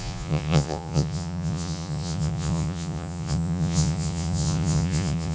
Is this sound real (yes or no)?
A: no